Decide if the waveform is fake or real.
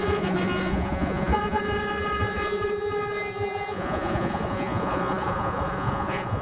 fake